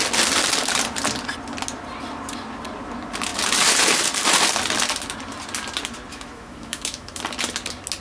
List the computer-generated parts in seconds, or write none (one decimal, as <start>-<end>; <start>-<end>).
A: 6.1-7.2